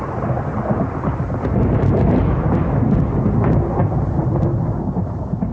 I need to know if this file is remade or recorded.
recorded